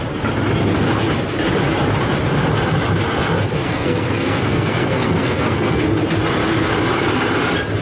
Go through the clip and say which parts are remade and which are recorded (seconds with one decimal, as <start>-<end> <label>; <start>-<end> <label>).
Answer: 0.0-3.6 recorded; 3.6-5.8 remade; 5.8-7.8 recorded